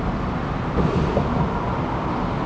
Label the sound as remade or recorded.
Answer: recorded